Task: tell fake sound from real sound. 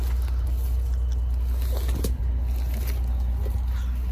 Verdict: real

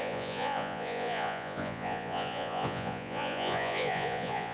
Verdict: fake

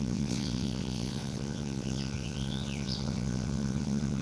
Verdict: fake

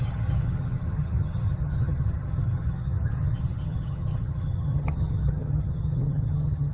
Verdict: fake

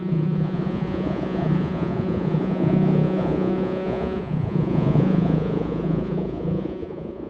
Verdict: fake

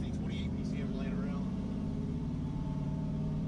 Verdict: fake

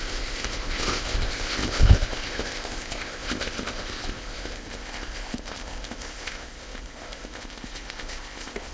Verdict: fake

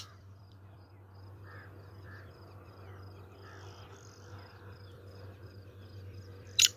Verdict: fake